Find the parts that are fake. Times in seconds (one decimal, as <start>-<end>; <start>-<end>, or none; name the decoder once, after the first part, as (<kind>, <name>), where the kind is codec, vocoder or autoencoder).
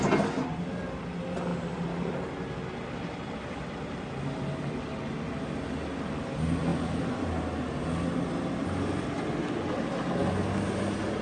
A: none